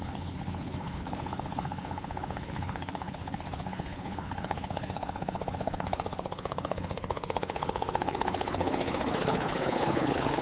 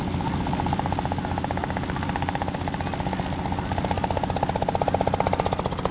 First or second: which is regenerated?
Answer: first